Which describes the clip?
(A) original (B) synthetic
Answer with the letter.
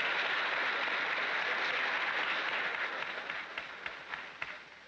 A